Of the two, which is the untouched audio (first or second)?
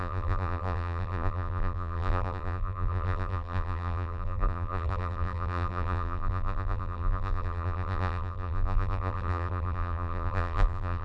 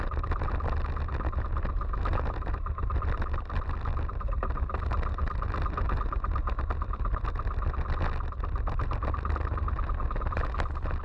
second